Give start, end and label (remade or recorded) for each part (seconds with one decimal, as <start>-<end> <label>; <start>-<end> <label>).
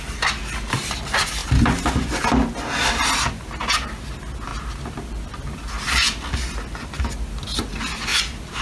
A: 0.0-4.5 recorded; 4.5-5.7 remade; 5.7-8.6 recorded